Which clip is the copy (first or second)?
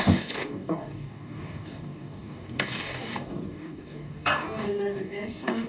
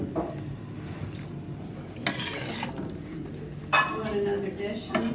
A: first